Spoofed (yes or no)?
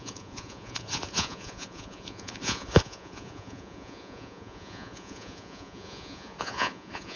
yes